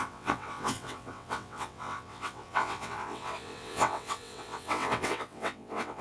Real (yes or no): no